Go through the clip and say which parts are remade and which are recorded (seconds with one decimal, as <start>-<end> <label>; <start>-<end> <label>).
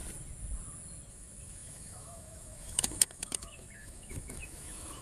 0.0-1.1 recorded; 1.1-5.0 remade